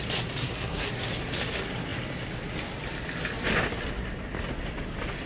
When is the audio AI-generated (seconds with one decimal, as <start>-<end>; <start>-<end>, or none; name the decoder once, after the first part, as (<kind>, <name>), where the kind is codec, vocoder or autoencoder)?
0.4-0.9 (codec, SNAC)